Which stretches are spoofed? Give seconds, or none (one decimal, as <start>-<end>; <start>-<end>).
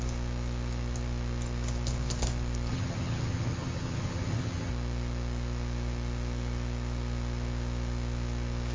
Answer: 2.7-4.7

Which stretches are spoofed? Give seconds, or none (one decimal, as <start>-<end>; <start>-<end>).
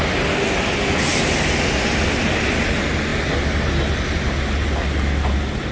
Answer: none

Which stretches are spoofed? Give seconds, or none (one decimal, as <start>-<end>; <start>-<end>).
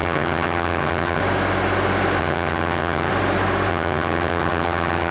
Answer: 0.0-1.2; 2.2-3.1; 3.7-5.1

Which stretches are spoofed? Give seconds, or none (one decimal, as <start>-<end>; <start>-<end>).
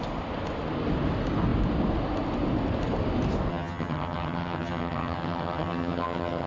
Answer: 3.5-6.5